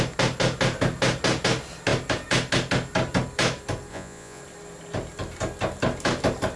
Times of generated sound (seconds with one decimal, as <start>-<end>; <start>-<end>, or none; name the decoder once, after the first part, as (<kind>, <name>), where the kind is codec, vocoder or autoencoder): 3.9-4.4 (vocoder, Vocos)